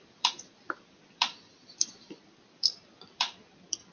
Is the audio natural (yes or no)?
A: no